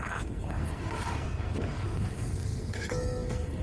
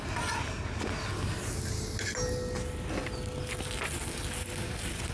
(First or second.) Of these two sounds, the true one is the second